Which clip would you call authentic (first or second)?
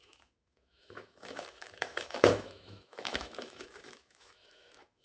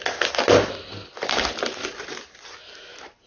second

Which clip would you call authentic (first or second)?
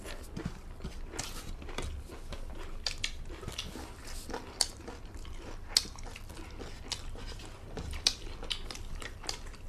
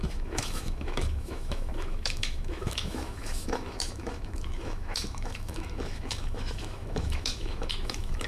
first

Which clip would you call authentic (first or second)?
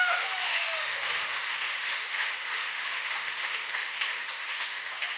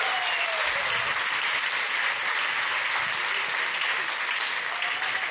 second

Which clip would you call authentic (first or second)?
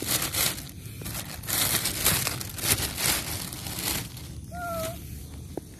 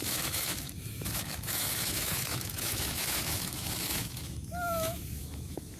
first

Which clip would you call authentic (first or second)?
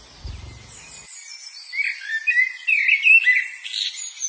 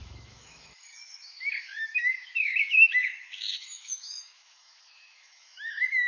first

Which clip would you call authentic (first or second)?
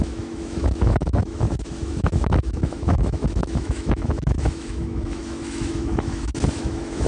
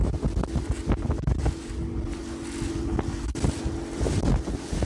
second